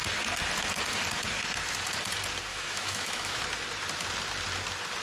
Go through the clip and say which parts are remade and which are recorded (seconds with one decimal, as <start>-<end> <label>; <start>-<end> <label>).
0.0-2.5 recorded; 2.5-3.4 remade; 3.4-5.0 recorded